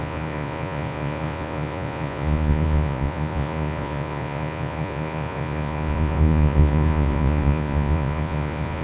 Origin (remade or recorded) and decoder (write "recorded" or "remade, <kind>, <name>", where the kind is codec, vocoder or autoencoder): remade, vocoder, Vocos